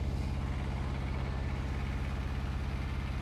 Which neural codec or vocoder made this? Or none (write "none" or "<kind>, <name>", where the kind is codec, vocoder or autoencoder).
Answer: none